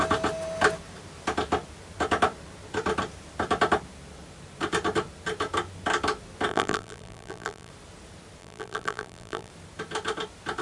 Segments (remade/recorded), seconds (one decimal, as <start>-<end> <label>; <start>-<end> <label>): 0.0-6.5 recorded; 6.5-7.7 remade; 7.7-8.4 recorded; 8.4-9.5 remade; 9.5-10.6 recorded